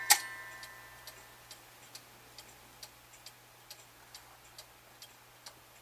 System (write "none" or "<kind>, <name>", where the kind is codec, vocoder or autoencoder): none